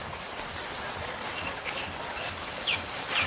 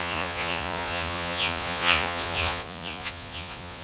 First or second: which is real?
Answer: first